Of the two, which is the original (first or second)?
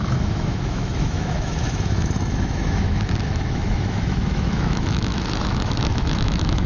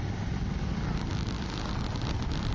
second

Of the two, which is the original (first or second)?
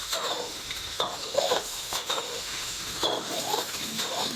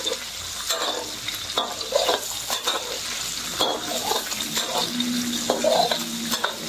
second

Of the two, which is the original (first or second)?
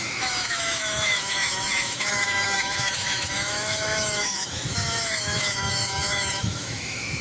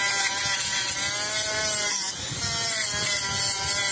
second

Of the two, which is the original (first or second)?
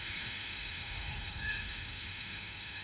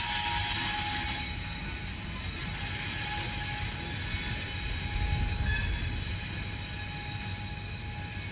second